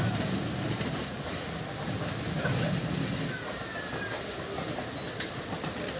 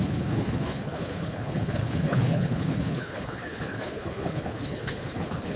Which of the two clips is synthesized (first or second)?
second